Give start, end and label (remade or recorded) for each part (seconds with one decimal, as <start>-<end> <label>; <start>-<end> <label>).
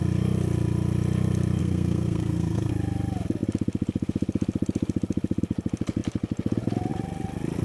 0.0-1.6 recorded; 1.6-2.7 remade; 2.7-7.6 recorded